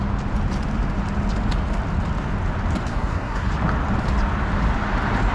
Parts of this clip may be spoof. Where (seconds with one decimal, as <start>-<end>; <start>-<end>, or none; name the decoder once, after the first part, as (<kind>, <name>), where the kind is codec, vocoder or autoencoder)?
2.9-3.5 (codec, SNAC)